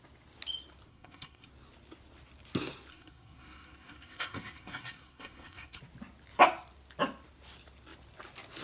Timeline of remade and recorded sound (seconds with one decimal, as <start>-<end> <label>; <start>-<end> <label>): 0.0-0.9 recorded; 0.9-1.5 remade; 1.5-2.9 recorded; 2.9-5.8 remade; 5.8-8.6 recorded